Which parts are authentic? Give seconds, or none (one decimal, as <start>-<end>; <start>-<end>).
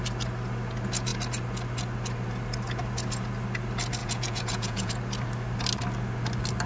0.0-4.0; 4.9-6.7